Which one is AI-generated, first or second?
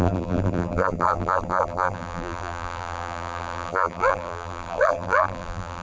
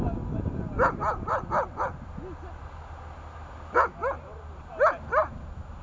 first